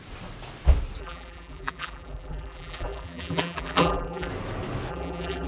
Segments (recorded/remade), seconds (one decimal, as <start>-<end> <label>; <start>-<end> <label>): 0.0-1.0 recorded; 1.0-4.3 remade; 4.3-4.9 recorded; 4.9-5.5 remade